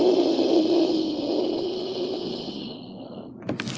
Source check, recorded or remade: recorded